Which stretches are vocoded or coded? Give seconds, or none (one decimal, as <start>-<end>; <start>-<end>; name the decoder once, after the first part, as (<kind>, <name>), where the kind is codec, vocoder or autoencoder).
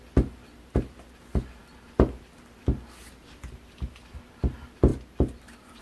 0.4-1.1 (vocoder, BigVGAN v2); 1.6-3.9; 4.9-5.8